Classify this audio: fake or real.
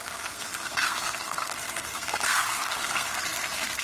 fake